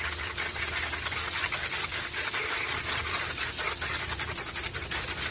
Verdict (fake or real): fake